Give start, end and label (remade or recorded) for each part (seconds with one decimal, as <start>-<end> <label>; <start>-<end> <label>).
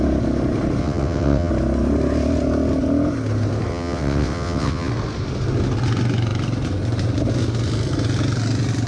0.0-0.8 recorded; 0.8-1.5 remade; 1.5-3.7 recorded; 3.7-4.9 remade; 4.9-8.9 recorded